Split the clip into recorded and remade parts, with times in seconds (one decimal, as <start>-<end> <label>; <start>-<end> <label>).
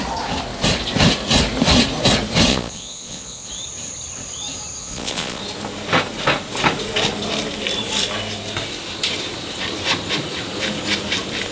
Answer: 0.0-2.5 recorded; 2.5-3.5 remade; 3.5-4.8 recorded; 4.8-5.4 remade; 5.4-11.5 recorded